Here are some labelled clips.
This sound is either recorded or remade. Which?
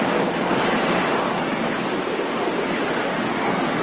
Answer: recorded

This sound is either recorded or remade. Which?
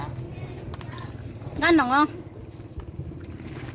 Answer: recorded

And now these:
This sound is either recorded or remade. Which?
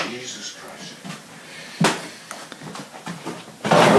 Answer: recorded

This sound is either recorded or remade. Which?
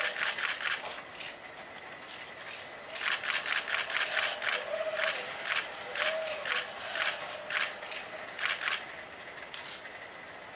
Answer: recorded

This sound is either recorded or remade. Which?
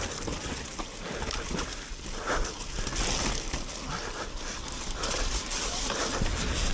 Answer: recorded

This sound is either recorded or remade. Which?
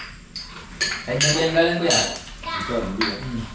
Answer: recorded